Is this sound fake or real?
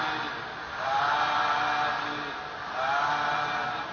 real